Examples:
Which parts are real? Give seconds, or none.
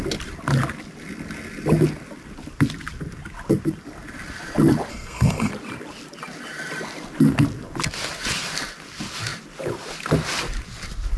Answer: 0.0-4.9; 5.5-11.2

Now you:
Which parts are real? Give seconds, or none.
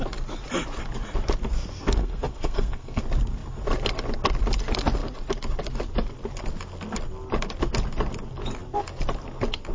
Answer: 0.0-2.0; 3.0-9.7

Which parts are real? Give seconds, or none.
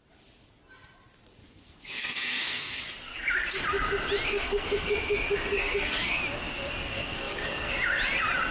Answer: 0.0-1.4; 2.8-4.3; 4.9-5.6; 6.2-6.8; 7.7-8.5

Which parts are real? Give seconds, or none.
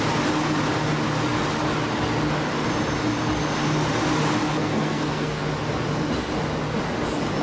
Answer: 0.0-4.6; 5.4-7.4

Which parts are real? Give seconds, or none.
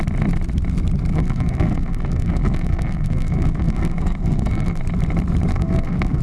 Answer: 0.0-1.1; 4.8-5.5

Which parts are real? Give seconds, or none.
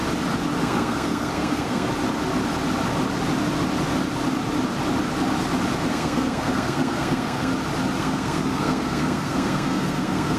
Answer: 0.0-0.6; 1.9-5.9; 7.5-8.0